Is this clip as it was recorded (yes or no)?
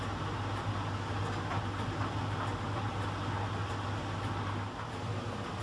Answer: yes